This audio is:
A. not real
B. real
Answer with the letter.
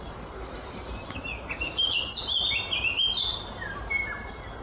B